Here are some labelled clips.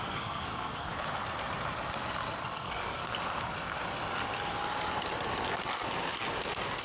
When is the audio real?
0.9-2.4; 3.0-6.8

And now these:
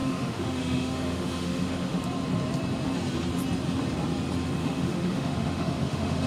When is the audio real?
2.0-4.6